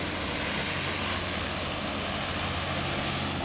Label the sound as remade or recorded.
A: recorded